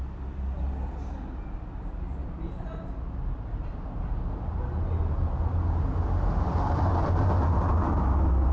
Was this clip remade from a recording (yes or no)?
no